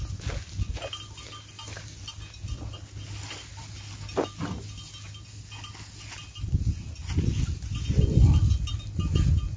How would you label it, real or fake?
real